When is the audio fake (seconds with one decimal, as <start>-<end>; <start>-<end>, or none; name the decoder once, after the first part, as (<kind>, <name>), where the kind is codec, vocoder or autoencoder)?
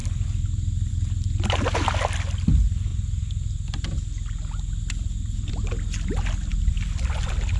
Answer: none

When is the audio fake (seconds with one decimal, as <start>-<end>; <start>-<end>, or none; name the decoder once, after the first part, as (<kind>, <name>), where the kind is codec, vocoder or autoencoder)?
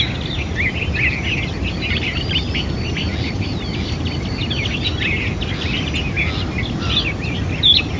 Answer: none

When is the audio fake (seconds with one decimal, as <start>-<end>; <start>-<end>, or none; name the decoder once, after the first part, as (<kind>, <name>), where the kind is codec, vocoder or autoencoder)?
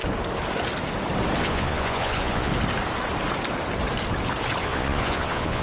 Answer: 1.4-2.5 (vocoder, Vocos); 4.6-5.6